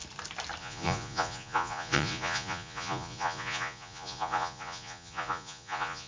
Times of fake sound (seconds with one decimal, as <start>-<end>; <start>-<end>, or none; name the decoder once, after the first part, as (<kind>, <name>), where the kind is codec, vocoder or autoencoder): 0.6-6.1 (vocoder, Vocos)

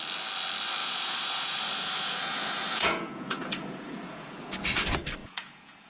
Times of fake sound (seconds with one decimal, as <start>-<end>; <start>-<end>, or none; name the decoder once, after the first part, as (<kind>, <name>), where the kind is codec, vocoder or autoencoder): 0.8-4.3 (vocoder, Vocos); 5.2-5.9